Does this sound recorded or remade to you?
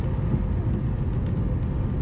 recorded